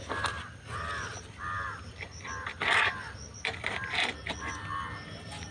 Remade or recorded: recorded